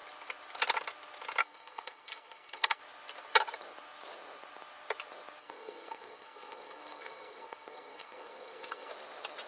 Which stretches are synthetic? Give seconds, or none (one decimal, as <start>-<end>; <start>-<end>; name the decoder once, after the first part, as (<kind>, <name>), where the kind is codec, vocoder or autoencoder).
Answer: 1.4-2.8 (codec, SNAC); 5.4-8.9